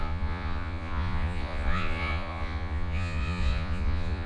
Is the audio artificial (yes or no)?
yes